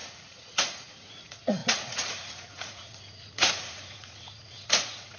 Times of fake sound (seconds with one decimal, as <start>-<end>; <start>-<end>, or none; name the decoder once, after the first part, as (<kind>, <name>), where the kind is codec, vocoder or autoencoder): 0.0-5.2 (vocoder, Vocos)